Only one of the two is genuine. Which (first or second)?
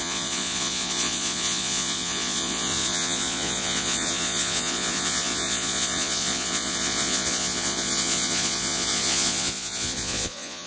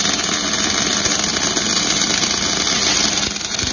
second